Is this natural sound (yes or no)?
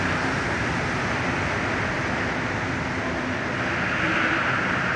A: yes